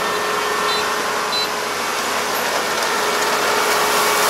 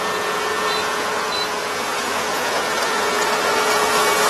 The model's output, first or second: second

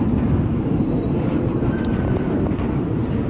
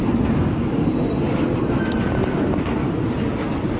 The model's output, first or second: first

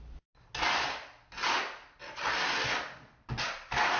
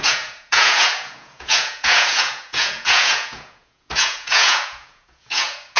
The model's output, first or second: second